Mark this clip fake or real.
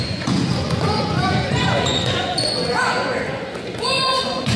fake